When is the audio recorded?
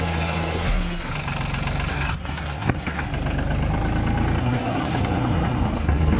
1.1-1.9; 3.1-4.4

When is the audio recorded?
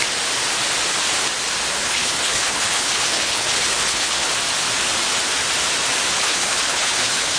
0.0-1.7; 4.3-6.2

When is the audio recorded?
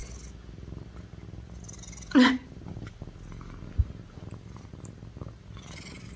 0.0-6.2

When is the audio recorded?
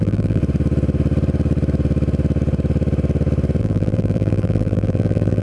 0.4-3.6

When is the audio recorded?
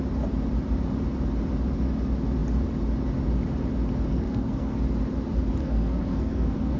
0.0-4.1; 4.8-5.6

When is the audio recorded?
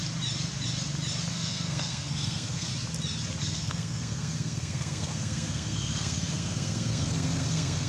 0.0-1.3; 2.7-3.4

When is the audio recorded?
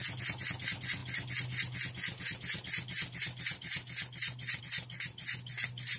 0.0-6.0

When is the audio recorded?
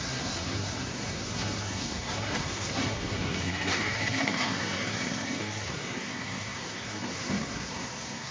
none